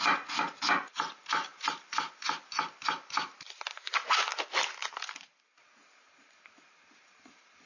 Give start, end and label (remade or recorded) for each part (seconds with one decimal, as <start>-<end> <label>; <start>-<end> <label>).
0.0-7.7 recorded